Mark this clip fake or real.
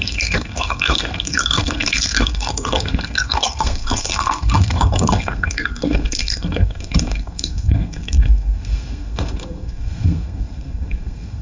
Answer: fake